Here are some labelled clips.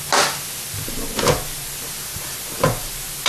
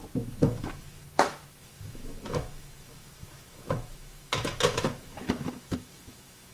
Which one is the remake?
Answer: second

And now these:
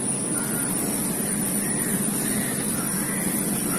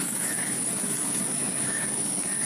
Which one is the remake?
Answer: second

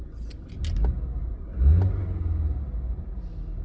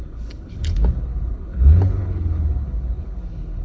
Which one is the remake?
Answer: second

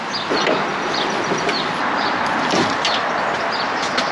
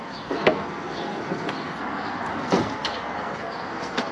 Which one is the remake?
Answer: second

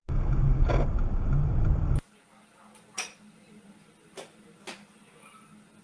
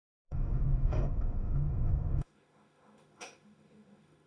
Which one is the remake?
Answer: second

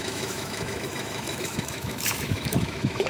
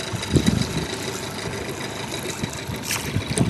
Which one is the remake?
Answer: first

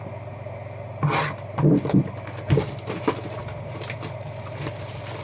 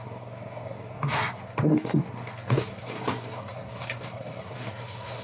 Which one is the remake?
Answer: second